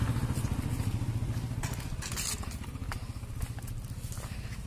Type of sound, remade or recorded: recorded